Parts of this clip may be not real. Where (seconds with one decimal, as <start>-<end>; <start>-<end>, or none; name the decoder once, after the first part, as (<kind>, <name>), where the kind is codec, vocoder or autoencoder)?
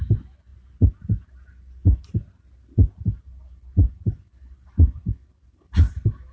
none